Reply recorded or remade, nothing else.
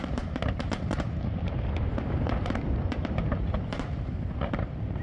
remade